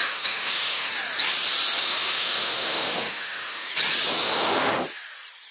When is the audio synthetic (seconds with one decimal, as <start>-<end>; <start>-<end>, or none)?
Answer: 0.0-0.9; 1.8-3.7; 4.2-4.7

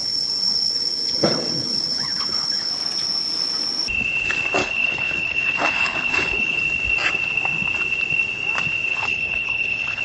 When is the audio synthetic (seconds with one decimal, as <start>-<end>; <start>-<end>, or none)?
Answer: 0.0-2.7; 4.6-6.6; 8.9-10.0

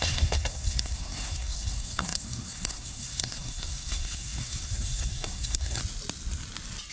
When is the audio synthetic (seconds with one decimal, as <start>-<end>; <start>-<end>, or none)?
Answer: 0.0-5.8

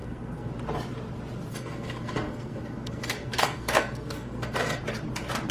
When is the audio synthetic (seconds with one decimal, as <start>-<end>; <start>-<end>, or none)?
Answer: 0.0-0.5; 1.5-4.8

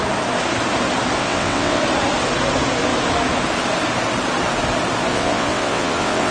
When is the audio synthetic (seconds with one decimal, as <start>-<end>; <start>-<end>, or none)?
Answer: 1.2-1.8; 5.1-6.3